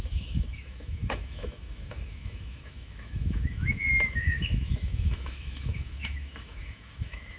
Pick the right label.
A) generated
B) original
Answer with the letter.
A